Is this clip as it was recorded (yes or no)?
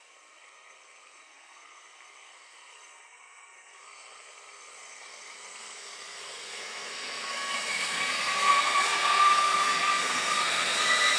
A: no